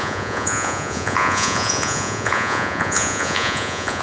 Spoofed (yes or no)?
yes